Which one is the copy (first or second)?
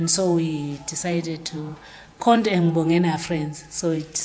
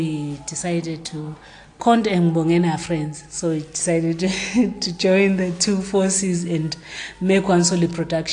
first